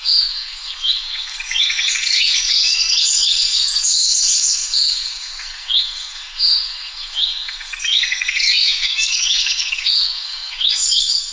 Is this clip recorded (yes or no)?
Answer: no